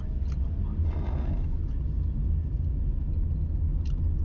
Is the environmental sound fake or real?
real